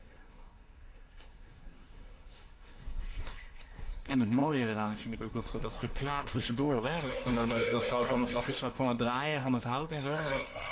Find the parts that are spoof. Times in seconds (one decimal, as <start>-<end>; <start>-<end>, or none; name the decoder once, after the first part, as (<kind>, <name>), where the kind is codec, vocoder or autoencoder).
0.0-10.7 (codec, SNAC)

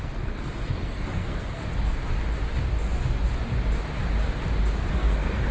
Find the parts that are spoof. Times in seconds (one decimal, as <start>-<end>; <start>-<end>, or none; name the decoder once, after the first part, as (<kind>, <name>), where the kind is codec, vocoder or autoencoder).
0.0-1.6 (codec, SNAC); 4.9-5.5

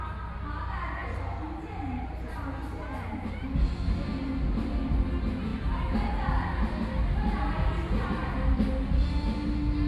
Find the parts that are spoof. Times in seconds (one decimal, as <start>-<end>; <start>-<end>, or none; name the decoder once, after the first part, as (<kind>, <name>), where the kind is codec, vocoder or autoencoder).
none

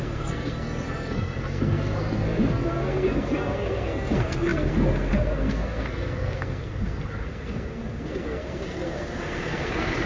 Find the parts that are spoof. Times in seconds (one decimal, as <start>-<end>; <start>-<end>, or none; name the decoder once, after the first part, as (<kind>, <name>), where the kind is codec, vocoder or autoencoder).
0.0-10.1 (codec, SNAC)

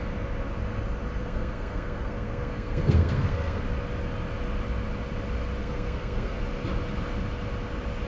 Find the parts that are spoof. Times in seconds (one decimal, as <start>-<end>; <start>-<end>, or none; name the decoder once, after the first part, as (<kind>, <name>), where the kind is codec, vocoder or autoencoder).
1.2-3.6 (codec, SNAC); 5.6-6.4

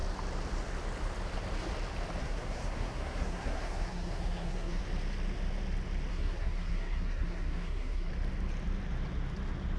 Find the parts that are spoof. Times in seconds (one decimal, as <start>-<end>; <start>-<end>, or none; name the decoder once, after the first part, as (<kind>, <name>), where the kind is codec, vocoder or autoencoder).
2.2-4.8 (codec, SNAC); 6.1-8.1